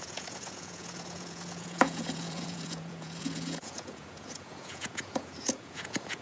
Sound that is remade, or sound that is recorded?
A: remade